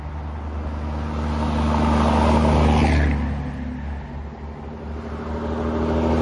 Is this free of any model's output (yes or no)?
yes